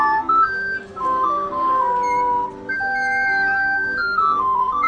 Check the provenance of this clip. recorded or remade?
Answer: recorded